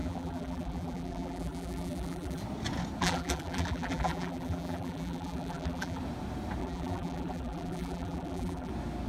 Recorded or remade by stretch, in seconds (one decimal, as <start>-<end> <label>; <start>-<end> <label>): 0.0-2.4 remade; 2.4-3.0 recorded; 3.0-6.0 remade; 6.0-6.6 recorded; 6.6-8.7 remade; 8.7-9.1 recorded